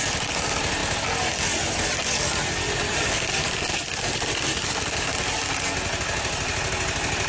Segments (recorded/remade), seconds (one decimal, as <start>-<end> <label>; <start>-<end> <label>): 0.0-7.3 recorded